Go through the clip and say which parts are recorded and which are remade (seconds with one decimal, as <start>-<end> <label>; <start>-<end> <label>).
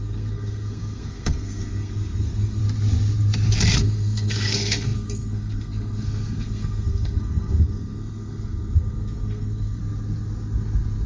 0.0-2.6 remade; 2.6-3.8 recorded; 3.8-9.8 remade; 9.8-11.1 recorded